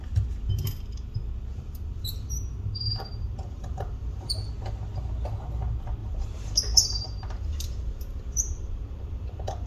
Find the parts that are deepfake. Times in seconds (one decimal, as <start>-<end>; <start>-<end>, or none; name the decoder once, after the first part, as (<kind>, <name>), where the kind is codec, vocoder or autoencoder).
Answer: 1.5-4.5 (vocoder, BigVGAN v2); 6.0-9.7